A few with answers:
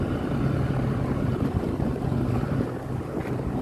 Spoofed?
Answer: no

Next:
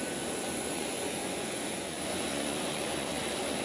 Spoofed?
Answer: yes